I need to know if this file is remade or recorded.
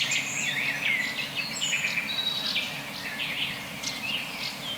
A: recorded